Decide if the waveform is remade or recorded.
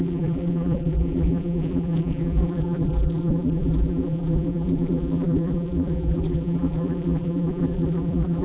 remade